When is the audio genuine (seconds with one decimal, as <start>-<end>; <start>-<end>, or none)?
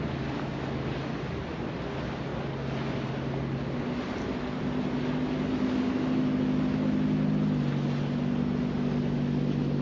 0.0-9.8